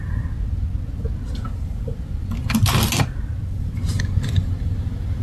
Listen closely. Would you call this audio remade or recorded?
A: recorded